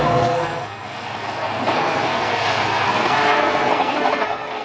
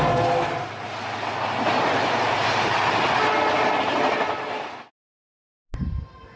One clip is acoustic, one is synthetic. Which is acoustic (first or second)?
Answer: second